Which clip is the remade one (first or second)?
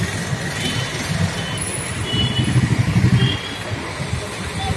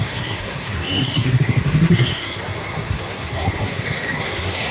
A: second